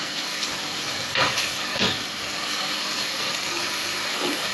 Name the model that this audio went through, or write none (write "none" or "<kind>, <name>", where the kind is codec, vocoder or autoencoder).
codec, SNAC